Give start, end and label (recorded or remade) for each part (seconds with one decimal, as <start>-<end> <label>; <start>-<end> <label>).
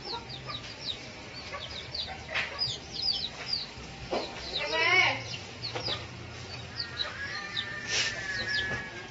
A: 0.0-3.6 recorded; 3.6-5.0 remade; 5.0-7.0 recorded; 7.0-8.1 remade; 8.1-9.1 recorded